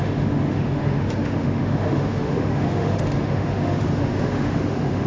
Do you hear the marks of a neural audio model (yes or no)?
yes